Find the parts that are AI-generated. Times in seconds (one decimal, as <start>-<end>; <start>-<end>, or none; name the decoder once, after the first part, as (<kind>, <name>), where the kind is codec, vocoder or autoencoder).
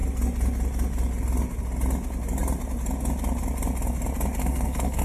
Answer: 4.4-5.0 (codec, SNAC)